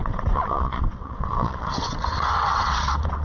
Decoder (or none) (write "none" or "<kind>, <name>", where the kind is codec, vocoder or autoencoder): vocoder, WaveNeXt